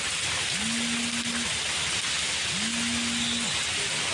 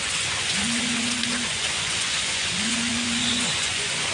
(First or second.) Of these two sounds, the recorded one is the first